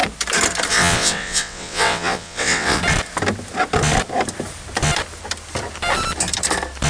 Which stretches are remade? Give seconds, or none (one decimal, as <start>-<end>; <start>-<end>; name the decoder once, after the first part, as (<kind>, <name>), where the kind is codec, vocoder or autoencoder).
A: 0.7-2.8 (vocoder, WaveNeXt)

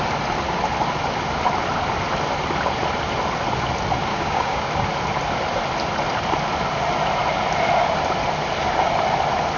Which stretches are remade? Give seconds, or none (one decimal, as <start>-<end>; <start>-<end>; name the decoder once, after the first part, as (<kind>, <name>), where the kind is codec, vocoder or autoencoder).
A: 4.1-4.7 (codec, DAC)

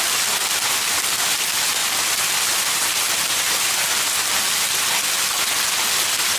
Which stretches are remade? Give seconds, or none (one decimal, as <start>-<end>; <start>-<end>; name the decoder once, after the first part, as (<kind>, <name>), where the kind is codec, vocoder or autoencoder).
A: none

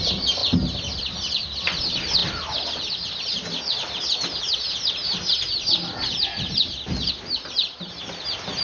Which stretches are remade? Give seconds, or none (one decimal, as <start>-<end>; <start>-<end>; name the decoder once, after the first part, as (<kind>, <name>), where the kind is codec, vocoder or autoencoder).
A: none

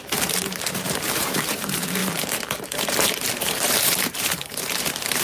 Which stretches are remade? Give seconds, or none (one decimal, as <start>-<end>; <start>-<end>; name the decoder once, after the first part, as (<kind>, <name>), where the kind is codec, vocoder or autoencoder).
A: 0.0-5.2 (vocoder, BigVGAN v2)

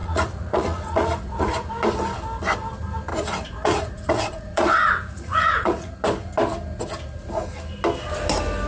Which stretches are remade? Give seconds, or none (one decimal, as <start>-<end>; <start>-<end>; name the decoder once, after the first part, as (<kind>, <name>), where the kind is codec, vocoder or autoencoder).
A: 0.0-1.7 (vocoder, Vocos); 3.1-5.9

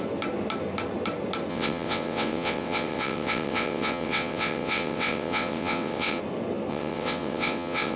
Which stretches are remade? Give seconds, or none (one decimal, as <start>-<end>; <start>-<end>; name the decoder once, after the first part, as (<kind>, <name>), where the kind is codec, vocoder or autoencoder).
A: 1.5-6.2 (vocoder, WaveNeXt); 6.7-8.0

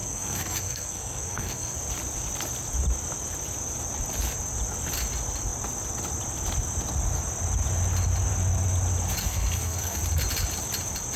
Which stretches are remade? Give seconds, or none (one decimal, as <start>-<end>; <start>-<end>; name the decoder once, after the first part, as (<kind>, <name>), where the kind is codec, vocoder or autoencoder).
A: 0.0-1.8 (codec, SNAC); 9.2-10.0